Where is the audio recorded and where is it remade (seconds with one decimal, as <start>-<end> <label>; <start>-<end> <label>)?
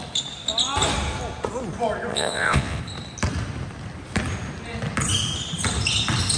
0.0-2.1 recorded; 2.1-2.8 remade; 2.8-6.4 recorded